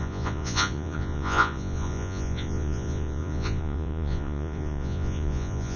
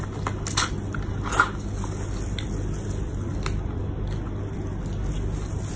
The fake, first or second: first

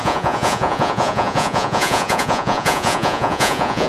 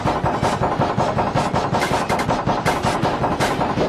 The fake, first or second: first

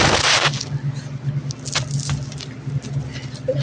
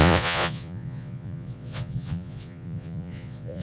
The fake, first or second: second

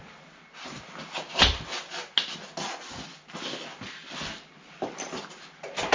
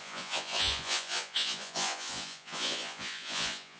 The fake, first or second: second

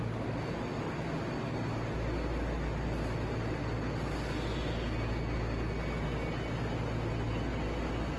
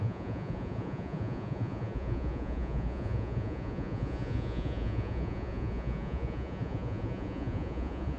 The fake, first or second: second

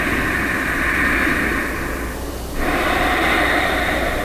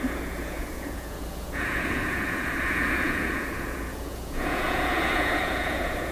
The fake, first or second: second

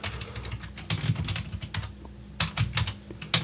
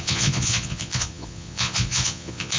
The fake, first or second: second